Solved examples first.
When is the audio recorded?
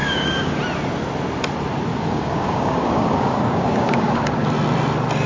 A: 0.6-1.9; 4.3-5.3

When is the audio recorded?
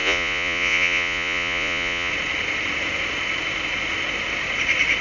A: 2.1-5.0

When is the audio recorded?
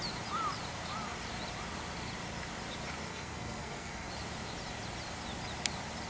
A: 0.0-3.1; 4.1-6.1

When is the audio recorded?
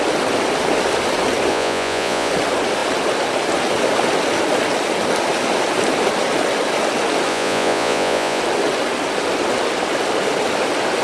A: 0.0-1.5; 2.3-7.3; 8.4-11.0